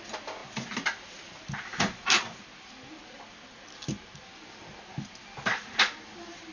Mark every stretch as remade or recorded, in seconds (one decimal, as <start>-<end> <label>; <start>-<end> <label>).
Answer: 0.0-6.5 recorded